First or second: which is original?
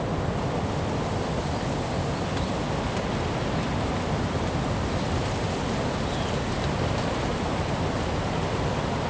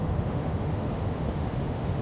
first